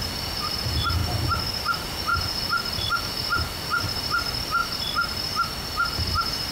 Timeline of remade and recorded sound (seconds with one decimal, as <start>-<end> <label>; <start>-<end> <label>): 0.0-1.0 remade; 1.0-1.6 recorded; 1.6-2.1 remade; 2.1-2.9 recorded; 2.9-4.6 remade; 4.6-6.1 recorded; 6.1-6.5 remade